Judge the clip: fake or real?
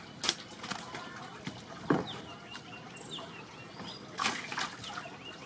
real